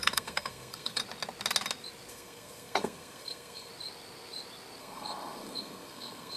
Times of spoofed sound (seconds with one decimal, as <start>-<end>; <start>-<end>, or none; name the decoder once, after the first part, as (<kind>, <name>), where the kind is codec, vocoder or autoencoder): 0.0-1.0 (codec, SNAC); 2.1-3.7; 4.8-6.4